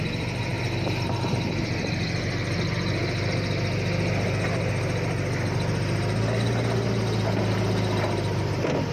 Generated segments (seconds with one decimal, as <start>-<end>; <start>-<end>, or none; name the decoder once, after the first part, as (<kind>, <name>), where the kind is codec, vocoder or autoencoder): none